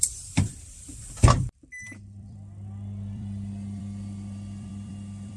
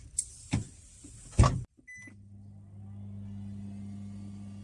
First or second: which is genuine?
second